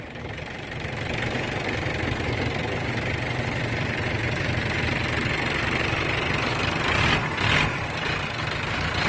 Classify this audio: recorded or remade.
remade